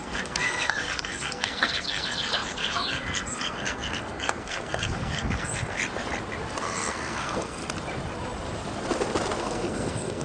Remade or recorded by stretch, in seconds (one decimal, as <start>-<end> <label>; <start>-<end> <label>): 0.0-5.8 remade; 5.8-6.6 recorded; 6.6-7.6 remade; 7.6-9.4 recorded; 9.4-10.2 remade